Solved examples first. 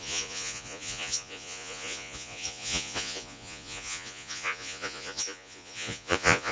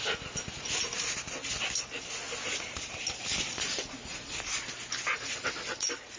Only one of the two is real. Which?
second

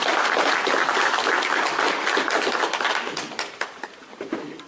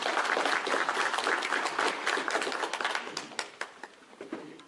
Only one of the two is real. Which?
second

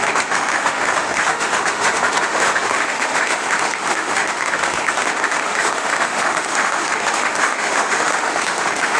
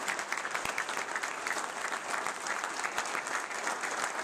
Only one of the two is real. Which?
second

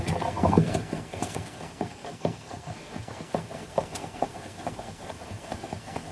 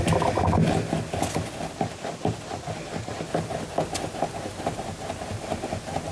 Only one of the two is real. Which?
second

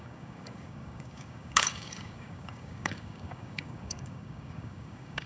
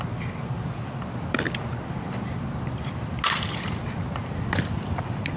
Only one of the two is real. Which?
second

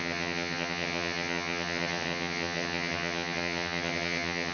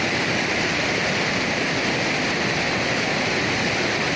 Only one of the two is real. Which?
second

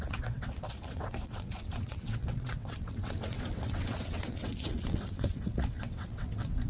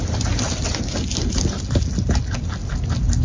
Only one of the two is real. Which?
second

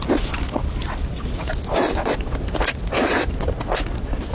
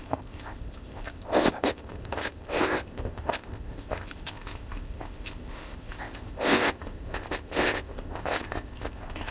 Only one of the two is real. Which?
first